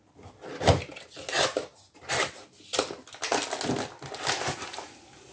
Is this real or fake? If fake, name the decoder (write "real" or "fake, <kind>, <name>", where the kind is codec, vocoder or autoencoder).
real